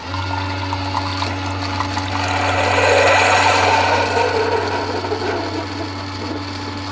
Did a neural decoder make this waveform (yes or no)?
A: no